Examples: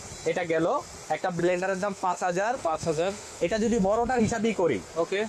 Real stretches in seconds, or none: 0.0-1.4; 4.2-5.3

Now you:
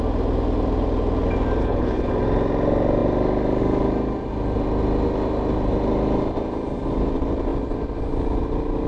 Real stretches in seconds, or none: 0.0-1.6; 2.1-8.9

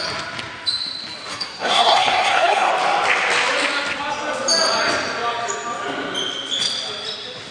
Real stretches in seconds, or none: 0.0-1.3; 2.7-7.5

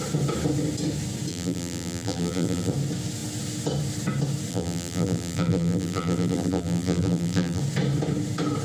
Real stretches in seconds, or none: 0.0-1.3; 2.7-4.5; 7.6-8.6

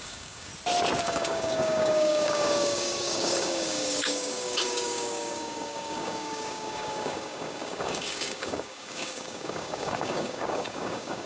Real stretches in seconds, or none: 0.5-1.0

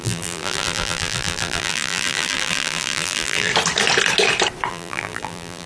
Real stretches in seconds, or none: 3.5-4.7